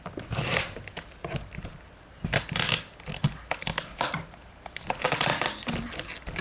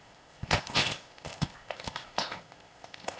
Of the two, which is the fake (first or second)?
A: second